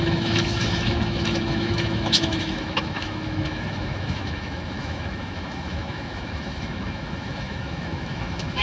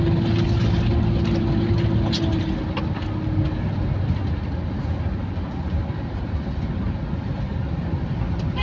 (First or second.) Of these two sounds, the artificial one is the first